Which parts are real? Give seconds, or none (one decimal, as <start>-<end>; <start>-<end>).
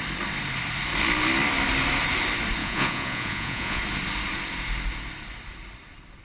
0.0-2.6; 3.8-6.2